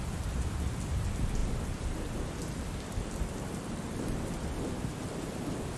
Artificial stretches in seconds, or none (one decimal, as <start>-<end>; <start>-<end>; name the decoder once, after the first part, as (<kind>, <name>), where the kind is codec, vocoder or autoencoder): 1.4-4.9 (vocoder, BigVGAN v2)